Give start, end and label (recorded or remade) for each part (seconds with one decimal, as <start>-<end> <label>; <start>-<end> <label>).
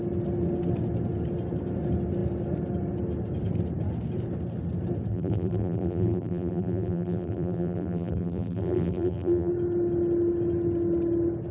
0.0-5.1 recorded; 5.1-9.5 remade; 9.5-11.5 recorded